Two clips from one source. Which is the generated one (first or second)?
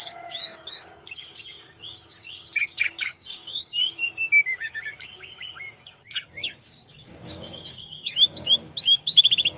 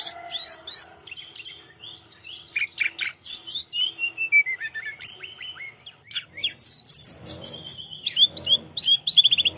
first